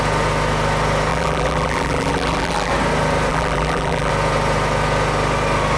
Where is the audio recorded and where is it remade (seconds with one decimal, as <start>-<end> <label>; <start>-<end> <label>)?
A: 0.0-1.1 recorded; 1.1-2.7 remade; 2.7-3.3 recorded; 3.3-4.1 remade; 4.1-5.8 recorded

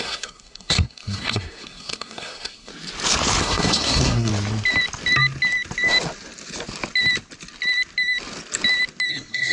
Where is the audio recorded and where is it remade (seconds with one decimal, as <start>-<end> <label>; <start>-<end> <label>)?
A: 0.0-2.7 remade; 2.7-3.4 recorded; 3.4-4.3 remade; 4.3-9.1 recorded; 9.1-9.5 remade

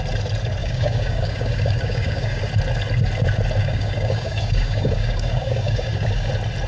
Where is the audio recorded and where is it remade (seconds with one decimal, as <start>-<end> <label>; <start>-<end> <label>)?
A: 0.0-0.6 recorded; 0.6-2.4 remade; 2.4-3.6 recorded; 3.6-6.3 remade; 6.3-6.7 recorded

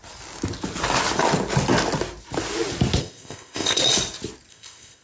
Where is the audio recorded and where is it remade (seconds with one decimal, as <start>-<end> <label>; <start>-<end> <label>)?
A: 0.0-3.0 recorded; 3.0-3.8 remade; 3.8-4.5 recorded; 4.5-5.0 remade

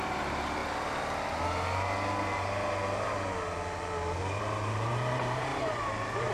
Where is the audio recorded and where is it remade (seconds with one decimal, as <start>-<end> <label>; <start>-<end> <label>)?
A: 0.0-0.6 remade; 0.6-4.4 recorded; 4.4-6.3 remade

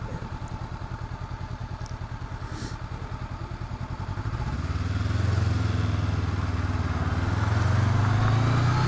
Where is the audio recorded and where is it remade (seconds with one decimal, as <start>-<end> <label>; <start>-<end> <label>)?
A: 0.0-8.9 recorded